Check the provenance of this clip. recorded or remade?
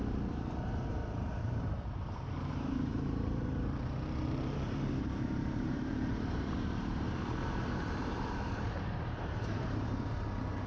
remade